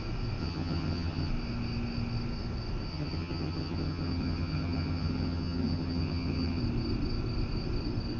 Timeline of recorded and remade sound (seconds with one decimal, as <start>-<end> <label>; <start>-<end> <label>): 0.0-0.4 recorded; 0.4-1.3 remade; 1.3-2.9 recorded; 2.9-6.6 remade; 6.6-8.2 recorded